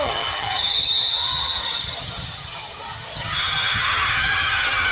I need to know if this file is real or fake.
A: fake